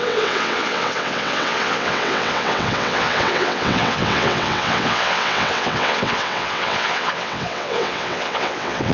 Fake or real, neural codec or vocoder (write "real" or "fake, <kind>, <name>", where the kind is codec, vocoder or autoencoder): fake, vocoder, WaveNeXt